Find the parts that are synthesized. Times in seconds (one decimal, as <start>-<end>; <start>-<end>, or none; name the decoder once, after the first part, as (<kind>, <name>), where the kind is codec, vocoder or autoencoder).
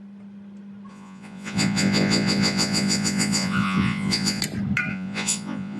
0.9-4.4 (vocoder, Vocos); 4.9-5.8